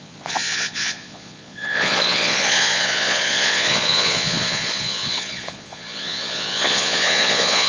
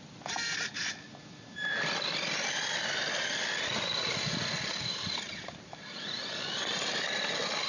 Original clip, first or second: second